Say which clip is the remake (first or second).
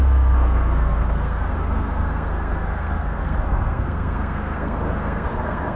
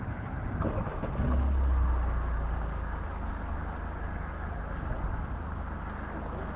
first